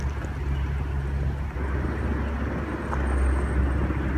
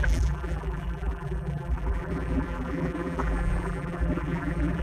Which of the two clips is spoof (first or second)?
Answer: second